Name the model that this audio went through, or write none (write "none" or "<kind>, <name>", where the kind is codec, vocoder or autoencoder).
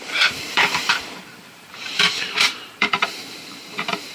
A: vocoder, BigVGAN v2